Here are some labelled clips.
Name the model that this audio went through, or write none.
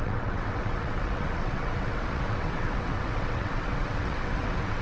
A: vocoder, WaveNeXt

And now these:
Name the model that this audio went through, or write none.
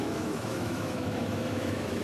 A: autoencoder, DAC-VAE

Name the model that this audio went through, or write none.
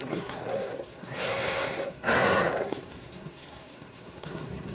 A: codec, SNAC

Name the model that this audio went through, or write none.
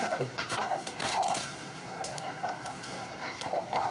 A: codec, SNAC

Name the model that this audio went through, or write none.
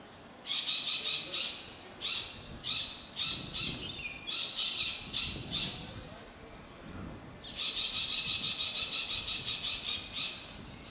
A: vocoder, BigVGAN v2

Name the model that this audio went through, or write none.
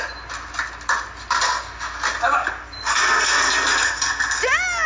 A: none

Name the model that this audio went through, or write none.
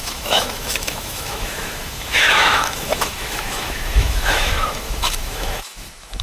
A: autoencoder, DAC-VAE